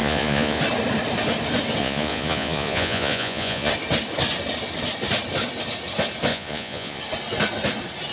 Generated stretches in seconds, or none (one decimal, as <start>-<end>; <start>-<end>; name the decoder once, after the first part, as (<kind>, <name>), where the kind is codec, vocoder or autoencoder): 0.0-0.6 (vocoder, Vocos); 1.8-3.7; 6.3-7.0

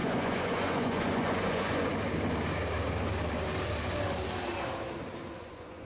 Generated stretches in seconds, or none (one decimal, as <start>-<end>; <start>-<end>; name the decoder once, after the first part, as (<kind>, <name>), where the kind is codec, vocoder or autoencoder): 0.0-1.9 (vocoder, Vocos); 5.4-5.9

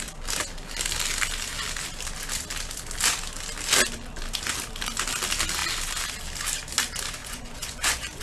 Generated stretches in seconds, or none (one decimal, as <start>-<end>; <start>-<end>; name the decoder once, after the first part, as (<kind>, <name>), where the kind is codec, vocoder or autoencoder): 7.2-8.2 (vocoder, Vocos)

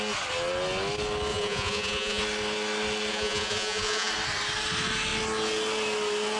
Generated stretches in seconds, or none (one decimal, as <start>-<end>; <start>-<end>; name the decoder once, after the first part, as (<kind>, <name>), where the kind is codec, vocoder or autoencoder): 1.3-2.2 (vocoder, Vocos); 3.1-4.1

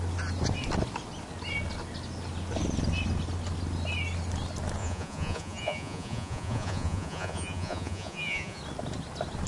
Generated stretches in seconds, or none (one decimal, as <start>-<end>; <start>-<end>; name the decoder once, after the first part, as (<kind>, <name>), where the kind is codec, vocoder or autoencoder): 4.8-8.6 (vocoder, Vocos)

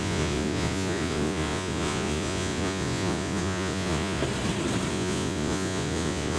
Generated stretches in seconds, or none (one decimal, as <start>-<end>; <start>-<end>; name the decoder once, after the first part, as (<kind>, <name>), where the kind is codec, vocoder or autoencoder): 0.0-4.2 (vocoder, Vocos); 4.9-6.4

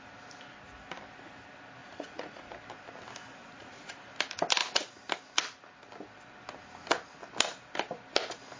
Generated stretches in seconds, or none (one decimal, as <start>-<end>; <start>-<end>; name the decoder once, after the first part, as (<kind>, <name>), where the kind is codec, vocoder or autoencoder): 1.8-2.5 (vocoder, Vocos); 3.4-4.1